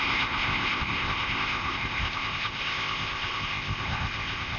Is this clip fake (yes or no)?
yes